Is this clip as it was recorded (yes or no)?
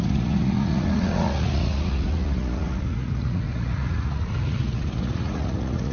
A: no